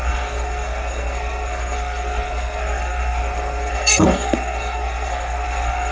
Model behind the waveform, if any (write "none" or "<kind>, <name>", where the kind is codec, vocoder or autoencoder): codec, SNAC